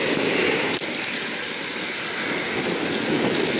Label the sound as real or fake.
real